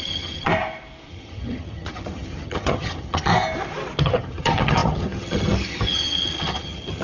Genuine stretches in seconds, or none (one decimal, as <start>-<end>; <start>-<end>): 0.5-1.1; 3.3-4.0